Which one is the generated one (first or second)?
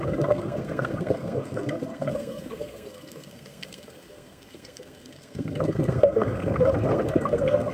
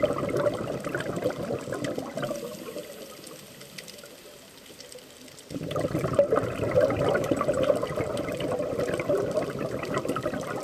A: first